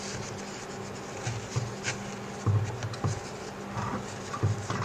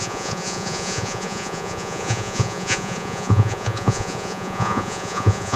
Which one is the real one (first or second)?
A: first